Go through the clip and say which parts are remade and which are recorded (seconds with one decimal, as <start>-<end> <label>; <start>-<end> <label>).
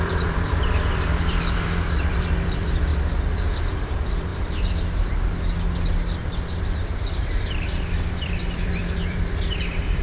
0.0-2.9 remade; 2.9-3.6 recorded; 3.6-4.3 remade; 4.3-6.6 recorded; 6.6-10.0 remade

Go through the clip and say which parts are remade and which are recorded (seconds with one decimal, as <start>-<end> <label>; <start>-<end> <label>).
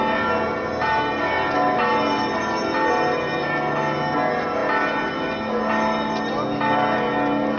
0.0-7.6 recorded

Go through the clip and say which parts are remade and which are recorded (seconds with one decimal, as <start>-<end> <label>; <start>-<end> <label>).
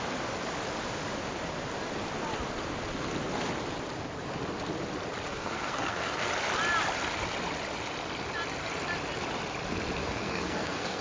0.0-5.3 recorded; 5.3-6.3 remade; 6.3-10.0 recorded; 10.0-11.0 remade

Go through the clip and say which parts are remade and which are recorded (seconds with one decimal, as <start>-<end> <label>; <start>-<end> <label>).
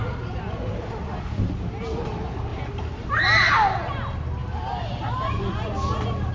0.0-2.5 recorded; 2.5-3.1 remade; 3.1-6.3 recorded